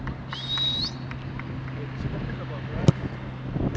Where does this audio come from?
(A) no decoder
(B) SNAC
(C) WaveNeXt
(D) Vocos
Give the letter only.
A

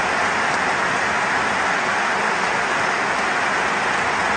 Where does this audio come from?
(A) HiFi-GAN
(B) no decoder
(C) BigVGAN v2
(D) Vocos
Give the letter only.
B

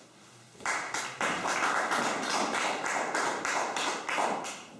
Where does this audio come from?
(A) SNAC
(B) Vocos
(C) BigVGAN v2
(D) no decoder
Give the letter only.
D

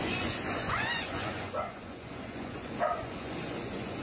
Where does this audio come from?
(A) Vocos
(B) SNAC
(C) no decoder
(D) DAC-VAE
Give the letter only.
A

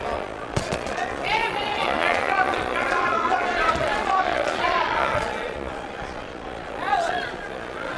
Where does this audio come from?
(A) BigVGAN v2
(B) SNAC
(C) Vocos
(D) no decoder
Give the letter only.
C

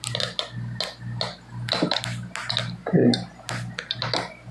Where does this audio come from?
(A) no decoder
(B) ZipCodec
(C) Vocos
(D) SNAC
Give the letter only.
A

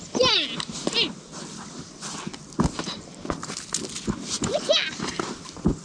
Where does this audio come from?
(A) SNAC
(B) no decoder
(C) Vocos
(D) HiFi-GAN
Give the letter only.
B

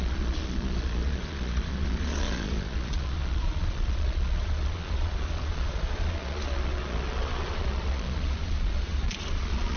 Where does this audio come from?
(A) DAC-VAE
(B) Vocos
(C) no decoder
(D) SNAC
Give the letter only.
B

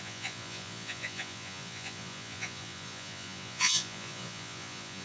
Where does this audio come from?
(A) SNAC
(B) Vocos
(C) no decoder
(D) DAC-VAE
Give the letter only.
B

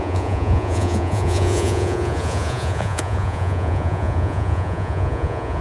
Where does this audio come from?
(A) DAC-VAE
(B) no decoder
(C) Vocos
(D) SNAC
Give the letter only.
C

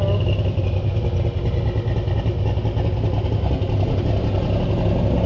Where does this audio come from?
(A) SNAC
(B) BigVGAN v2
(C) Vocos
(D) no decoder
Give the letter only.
D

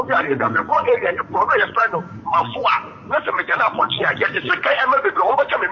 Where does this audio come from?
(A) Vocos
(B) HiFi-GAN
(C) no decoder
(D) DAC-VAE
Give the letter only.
A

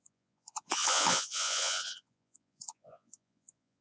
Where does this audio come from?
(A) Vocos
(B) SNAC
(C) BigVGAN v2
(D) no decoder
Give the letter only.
A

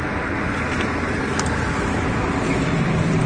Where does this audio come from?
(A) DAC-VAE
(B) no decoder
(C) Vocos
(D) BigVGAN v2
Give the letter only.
B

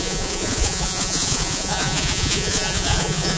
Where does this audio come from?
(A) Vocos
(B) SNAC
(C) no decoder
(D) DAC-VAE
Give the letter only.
A